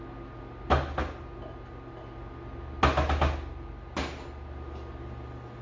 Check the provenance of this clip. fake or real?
real